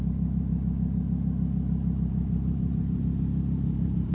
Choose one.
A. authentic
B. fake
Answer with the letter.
B